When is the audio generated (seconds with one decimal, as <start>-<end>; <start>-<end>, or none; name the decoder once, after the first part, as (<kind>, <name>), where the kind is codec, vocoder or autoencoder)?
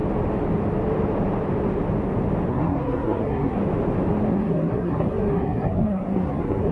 2.5-3.6 (codec, SNAC); 4.3-6.7